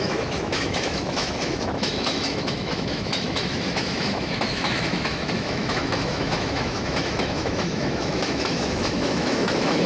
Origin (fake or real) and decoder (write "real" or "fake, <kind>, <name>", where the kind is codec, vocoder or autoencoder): fake, autoencoder, DAC-VAE